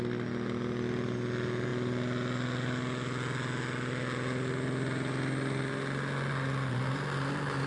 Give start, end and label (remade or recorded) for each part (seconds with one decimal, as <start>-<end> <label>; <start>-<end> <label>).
0.0-7.7 recorded